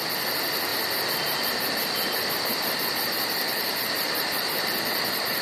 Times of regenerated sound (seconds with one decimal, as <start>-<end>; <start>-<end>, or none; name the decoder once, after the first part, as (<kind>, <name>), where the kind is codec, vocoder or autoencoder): 3.4-5.0 (vocoder, BigVGAN v2)